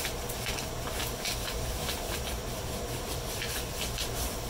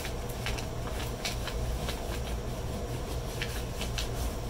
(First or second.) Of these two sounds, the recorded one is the second